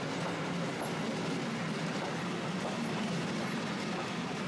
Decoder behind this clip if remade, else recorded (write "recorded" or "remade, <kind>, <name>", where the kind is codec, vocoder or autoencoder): recorded